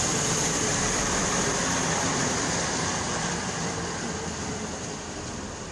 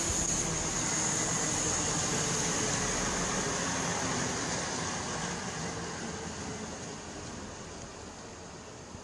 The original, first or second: second